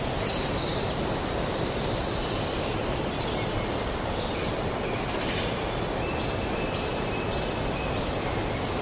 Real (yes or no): yes